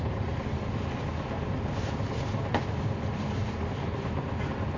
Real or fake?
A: real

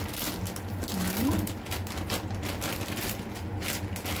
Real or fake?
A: real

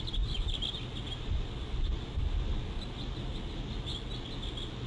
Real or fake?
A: real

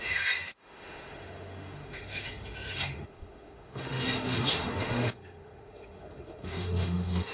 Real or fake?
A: fake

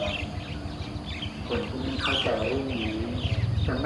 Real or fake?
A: real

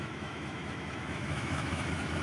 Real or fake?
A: fake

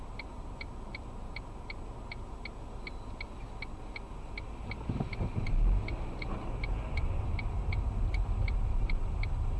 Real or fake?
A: real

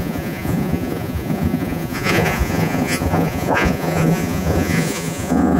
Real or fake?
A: fake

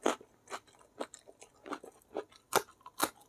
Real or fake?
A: real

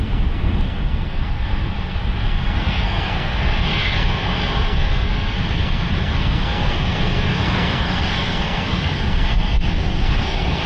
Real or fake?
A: fake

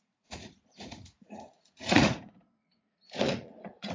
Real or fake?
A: fake